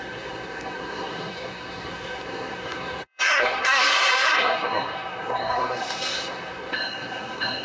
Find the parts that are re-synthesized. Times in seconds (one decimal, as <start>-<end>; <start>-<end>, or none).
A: 0.0-7.6